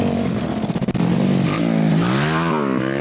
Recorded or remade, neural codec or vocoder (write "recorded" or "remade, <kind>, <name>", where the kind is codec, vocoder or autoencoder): recorded